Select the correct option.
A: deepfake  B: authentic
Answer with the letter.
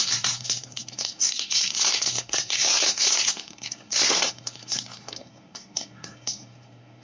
A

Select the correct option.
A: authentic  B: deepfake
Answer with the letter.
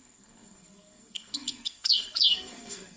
B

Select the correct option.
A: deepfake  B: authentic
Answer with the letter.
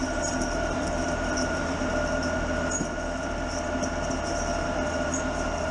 B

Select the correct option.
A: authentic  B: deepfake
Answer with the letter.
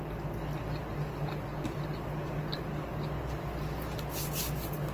A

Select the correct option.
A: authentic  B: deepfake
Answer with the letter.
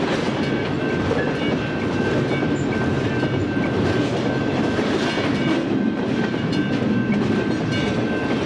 A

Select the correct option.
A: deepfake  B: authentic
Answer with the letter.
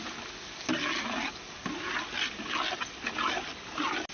B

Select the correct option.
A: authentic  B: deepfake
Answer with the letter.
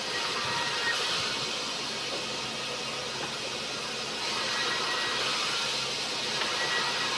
A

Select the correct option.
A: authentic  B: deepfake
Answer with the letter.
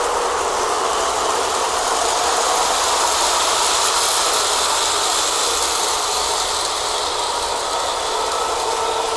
A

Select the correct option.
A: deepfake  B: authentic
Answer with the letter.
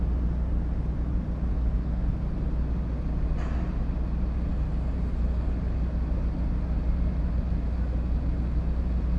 B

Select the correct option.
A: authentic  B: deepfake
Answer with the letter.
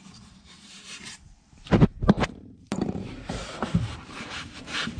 B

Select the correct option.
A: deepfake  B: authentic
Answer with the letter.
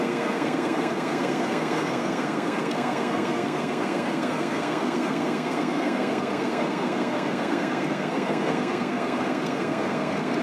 A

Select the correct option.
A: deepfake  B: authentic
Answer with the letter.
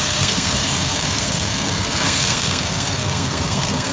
A